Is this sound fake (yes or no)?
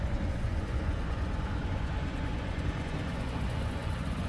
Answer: yes